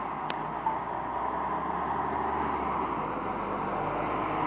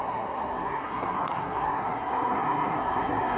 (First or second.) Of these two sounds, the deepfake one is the second